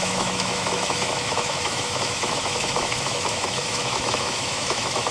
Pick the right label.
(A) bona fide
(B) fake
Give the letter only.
B